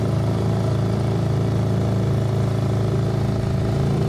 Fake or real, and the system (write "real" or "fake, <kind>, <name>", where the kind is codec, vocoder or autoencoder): real